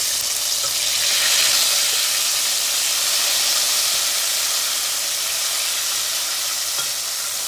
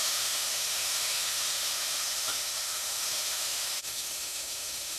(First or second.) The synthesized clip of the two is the second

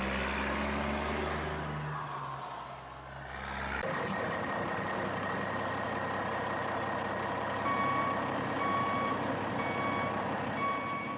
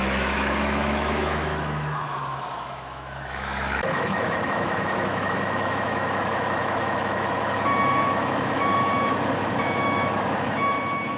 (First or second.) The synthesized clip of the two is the second